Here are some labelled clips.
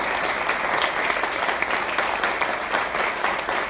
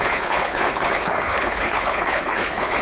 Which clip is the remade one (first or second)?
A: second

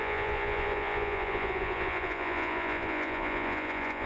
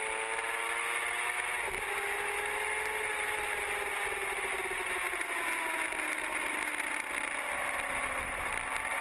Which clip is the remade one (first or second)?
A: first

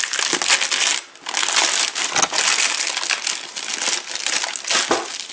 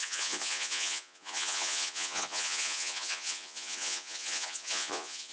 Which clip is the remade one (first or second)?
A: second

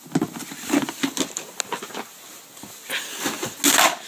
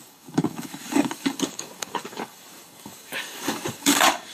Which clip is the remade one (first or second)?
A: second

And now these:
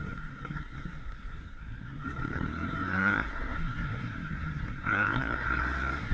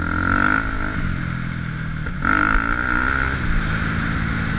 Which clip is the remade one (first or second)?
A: first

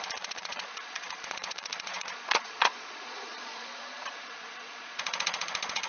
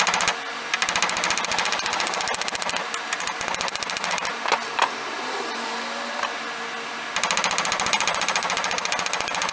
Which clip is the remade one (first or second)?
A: first